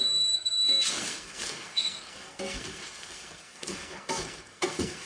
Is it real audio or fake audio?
fake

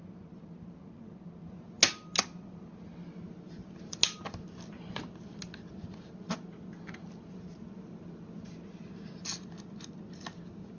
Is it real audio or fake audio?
real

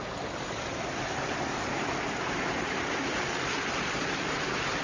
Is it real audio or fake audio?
real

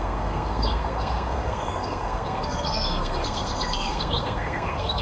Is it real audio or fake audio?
fake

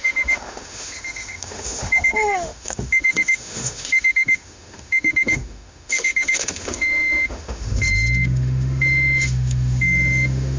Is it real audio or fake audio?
fake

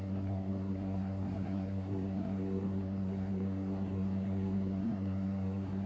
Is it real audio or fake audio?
fake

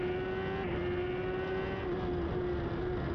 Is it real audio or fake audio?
real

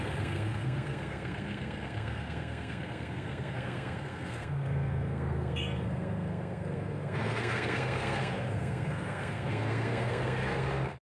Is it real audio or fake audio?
fake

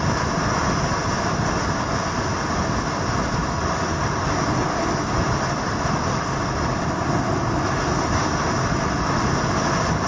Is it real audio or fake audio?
real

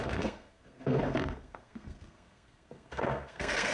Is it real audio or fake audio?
fake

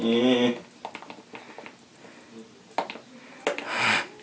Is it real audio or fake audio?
real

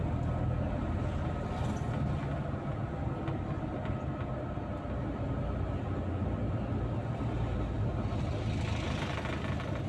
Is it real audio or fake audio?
real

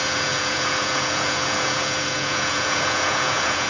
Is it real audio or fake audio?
fake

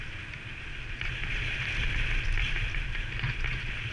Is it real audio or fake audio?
real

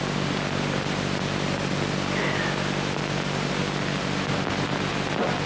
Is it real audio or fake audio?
real